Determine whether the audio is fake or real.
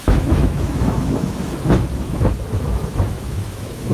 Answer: fake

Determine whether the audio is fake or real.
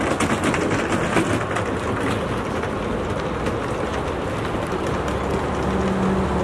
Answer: real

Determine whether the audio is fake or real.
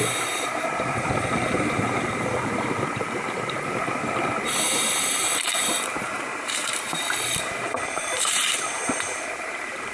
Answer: fake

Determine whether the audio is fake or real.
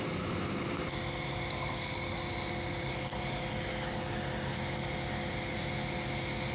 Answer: real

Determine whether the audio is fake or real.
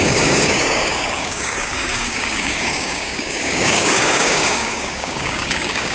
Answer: fake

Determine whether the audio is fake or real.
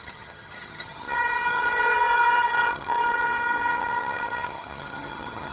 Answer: fake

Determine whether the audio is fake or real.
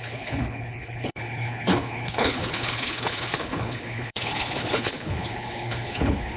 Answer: fake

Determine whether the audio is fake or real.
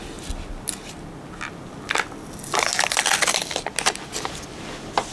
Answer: real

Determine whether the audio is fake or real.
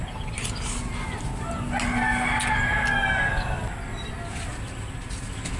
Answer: real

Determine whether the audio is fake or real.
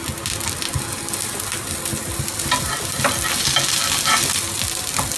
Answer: real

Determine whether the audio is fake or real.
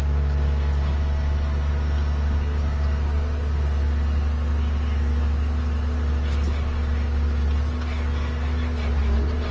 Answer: real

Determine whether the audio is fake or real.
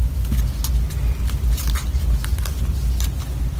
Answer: real